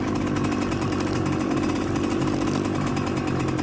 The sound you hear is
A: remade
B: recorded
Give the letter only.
B